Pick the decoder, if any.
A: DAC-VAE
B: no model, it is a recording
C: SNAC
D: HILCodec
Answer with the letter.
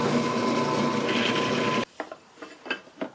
B